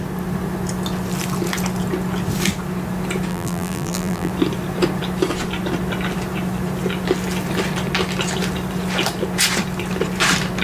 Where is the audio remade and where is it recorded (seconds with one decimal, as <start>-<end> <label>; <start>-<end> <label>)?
0.0-3.3 recorded; 3.3-4.3 remade; 4.3-10.6 recorded